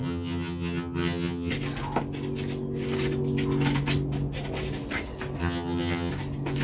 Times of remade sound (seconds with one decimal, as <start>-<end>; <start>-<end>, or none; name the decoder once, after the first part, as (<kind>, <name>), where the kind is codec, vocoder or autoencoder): 0.0-1.5 (vocoder, HiFi-GAN); 5.4-6.1